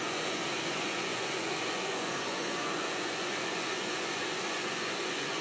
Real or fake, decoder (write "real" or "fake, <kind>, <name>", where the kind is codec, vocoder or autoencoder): fake, vocoder, Vocos